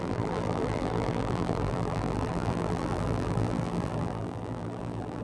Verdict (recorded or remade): remade